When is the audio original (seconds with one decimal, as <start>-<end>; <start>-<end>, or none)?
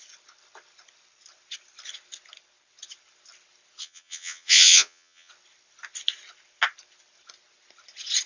0.0-3.8; 5.3-8.3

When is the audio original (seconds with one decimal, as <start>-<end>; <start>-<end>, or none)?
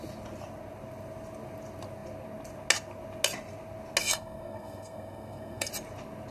0.0-4.0; 5.7-6.3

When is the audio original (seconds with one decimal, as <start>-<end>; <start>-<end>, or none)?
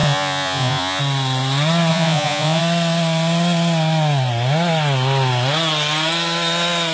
1.0-1.9; 2.6-6.9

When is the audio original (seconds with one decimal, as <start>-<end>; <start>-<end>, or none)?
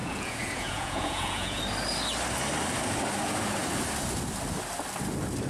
1.6-5.5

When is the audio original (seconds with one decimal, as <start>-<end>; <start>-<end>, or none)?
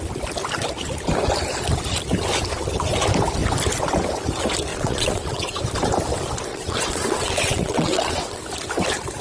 0.0-4.7; 5.6-6.5; 8.4-9.2